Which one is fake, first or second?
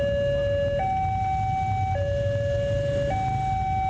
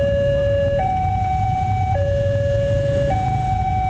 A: second